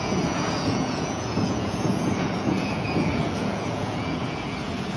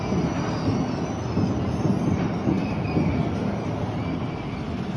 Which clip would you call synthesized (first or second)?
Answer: first